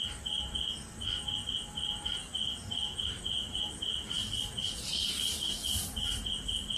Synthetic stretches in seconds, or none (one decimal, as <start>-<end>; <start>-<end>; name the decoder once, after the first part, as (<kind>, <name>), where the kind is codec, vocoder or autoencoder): 2.3-3.8 (vocoder, BigVGAN v2); 4.2-5.4